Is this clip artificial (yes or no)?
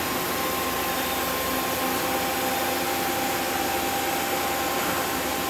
no